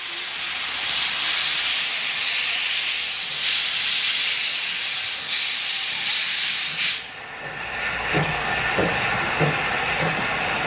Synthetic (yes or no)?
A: no